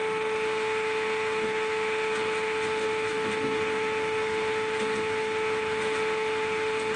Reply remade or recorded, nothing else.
remade